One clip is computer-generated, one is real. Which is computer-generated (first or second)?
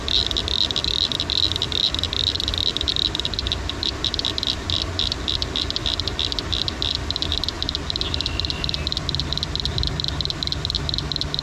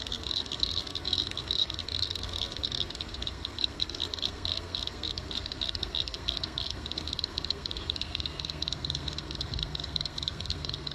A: second